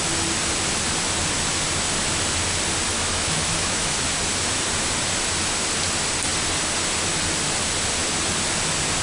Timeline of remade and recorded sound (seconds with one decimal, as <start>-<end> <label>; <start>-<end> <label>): 0.0-2.9 recorded; 2.9-4.0 remade; 4.0-9.0 recorded